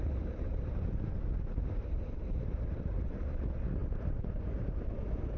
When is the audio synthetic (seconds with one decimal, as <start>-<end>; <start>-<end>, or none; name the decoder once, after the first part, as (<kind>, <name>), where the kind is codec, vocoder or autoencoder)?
0.0-3.2 (vocoder, BigVGAN v2); 3.8-5.0